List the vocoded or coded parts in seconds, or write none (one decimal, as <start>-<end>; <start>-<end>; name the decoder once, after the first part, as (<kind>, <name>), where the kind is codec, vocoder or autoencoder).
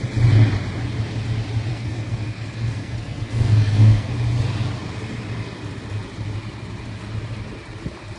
1.7-4.1 (codec, SNAC)